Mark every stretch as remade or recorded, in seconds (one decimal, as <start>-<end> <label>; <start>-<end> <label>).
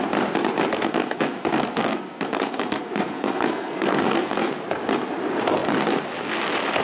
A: 0.0-0.7 recorded; 0.7-4.5 remade; 4.5-6.8 recorded